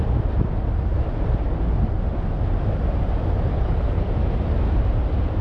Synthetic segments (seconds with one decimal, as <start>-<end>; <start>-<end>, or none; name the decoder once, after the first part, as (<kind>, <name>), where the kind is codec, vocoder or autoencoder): 3.5-4.1 (codec, HILCodec)